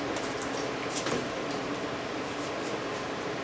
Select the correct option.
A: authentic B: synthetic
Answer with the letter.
A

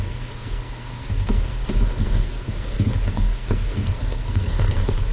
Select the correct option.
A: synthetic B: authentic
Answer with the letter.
A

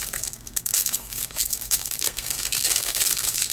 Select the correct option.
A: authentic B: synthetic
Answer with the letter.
B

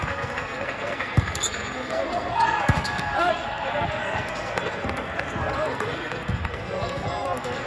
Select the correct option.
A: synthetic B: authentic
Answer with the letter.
A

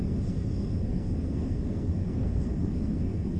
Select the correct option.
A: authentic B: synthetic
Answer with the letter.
B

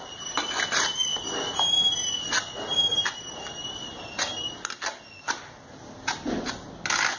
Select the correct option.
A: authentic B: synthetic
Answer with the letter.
A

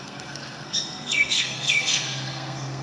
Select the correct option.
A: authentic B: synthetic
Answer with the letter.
B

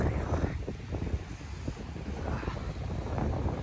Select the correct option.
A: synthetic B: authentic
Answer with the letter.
B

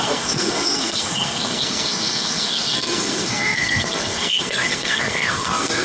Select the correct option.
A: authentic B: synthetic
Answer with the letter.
B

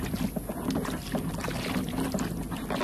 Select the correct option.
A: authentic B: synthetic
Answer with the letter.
A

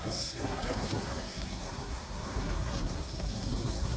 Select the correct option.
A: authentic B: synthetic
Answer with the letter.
B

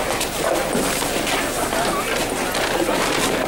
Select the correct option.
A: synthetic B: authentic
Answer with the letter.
B